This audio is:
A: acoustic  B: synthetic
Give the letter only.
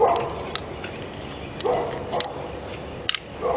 A